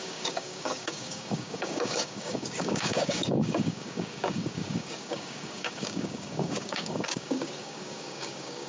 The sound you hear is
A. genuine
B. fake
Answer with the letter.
B